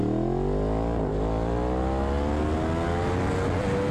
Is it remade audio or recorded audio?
recorded